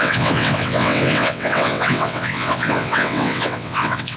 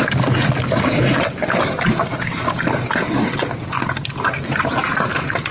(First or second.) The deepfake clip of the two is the first